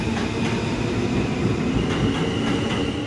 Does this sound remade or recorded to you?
recorded